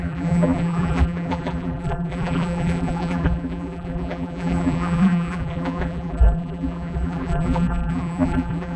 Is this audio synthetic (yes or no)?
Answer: yes